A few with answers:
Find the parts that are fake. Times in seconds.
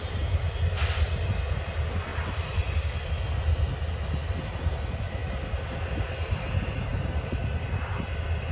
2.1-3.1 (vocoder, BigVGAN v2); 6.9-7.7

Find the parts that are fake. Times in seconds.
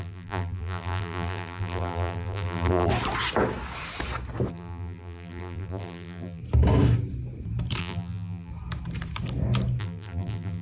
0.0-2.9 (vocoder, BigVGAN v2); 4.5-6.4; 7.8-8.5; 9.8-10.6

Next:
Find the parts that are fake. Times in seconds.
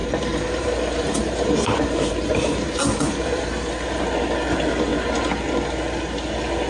0.0-4.0 (vocoder, BigVGAN v2)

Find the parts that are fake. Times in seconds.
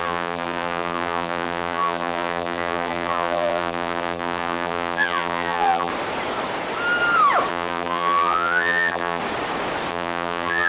0.0-5.9 (vocoder, BigVGAN v2); 7.5-9.2; 9.9-10.7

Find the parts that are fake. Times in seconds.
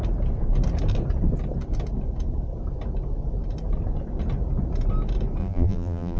5.4-6.2 (vocoder, BigVGAN v2)